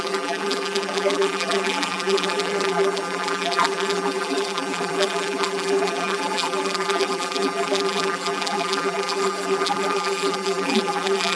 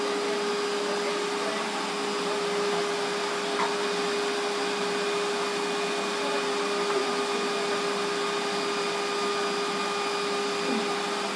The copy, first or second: first